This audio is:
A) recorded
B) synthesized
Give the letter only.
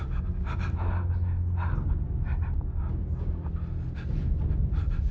A